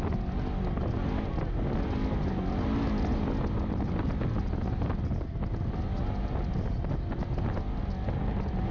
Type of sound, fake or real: real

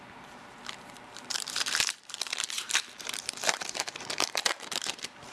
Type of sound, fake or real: fake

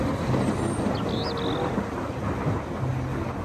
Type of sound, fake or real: real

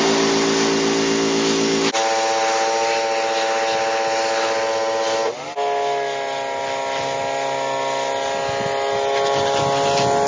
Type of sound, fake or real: real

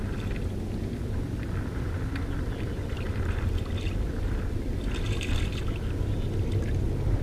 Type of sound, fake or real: real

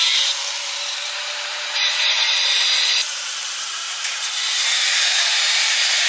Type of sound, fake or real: fake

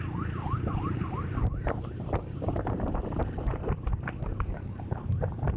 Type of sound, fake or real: fake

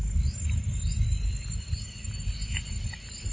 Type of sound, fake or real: fake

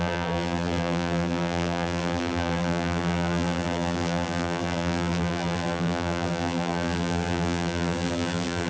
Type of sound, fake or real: fake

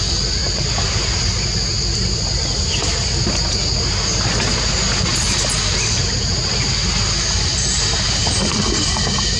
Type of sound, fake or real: real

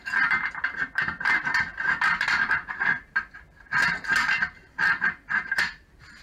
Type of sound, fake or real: fake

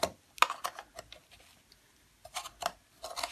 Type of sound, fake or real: real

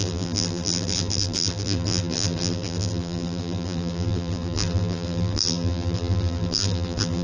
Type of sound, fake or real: fake